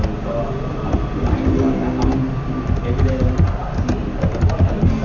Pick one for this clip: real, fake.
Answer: real